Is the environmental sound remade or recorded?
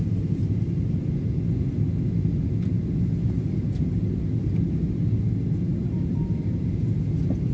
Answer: recorded